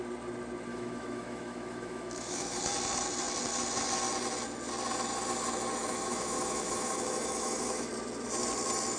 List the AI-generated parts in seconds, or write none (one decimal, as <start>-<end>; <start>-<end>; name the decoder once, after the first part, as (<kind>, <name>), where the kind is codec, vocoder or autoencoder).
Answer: 0.7-2.6 (autoencoder, DAC-VAE); 5.8-7.9